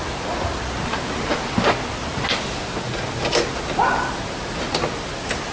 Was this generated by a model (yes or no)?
no